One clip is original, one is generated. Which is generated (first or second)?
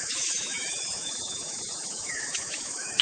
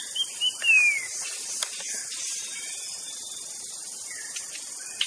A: first